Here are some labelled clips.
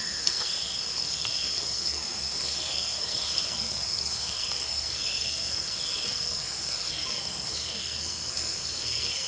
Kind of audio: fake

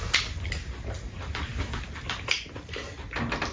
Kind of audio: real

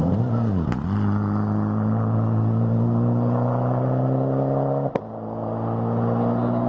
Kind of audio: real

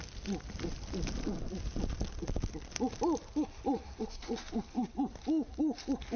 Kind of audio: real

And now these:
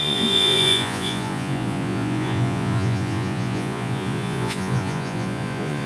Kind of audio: fake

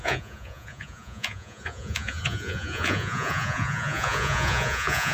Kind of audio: fake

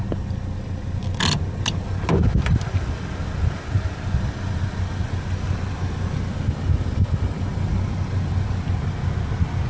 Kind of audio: real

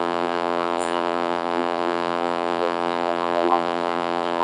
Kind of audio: fake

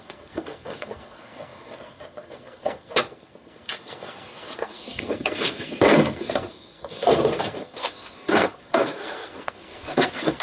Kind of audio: fake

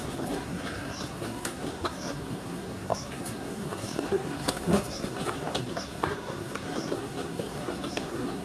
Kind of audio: fake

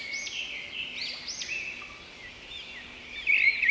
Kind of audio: real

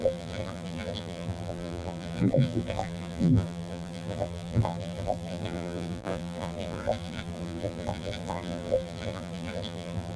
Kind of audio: fake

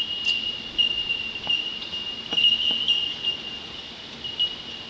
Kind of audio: real